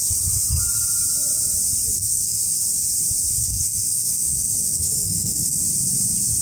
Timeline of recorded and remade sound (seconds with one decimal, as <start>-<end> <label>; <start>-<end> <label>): 0.0-1.9 recorded; 1.9-2.6 remade; 2.6-3.4 recorded; 3.4-5.6 remade; 5.6-6.4 recorded